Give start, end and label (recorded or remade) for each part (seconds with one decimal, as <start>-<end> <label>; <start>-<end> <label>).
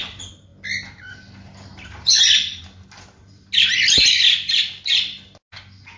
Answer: 0.0-6.0 recorded